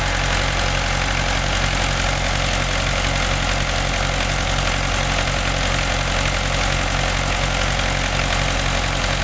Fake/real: real